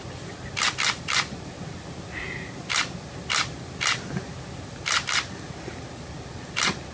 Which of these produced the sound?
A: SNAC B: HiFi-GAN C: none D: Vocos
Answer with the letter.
C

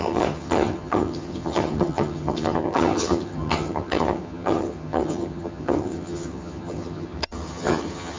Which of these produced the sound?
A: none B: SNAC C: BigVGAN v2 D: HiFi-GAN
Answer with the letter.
D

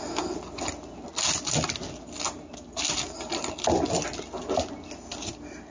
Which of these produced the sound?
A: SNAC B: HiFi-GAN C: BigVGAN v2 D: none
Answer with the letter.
D